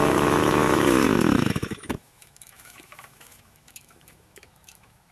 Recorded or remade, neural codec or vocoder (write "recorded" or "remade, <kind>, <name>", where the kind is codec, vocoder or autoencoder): remade, autoencoder, DAC-VAE